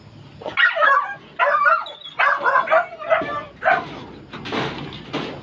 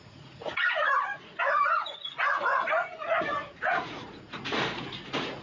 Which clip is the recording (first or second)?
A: first